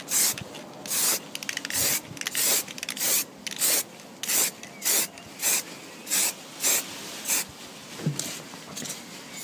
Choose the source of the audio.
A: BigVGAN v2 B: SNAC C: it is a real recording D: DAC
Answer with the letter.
C